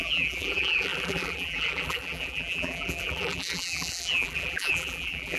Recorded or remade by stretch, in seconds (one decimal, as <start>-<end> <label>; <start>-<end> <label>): 0.0-5.4 remade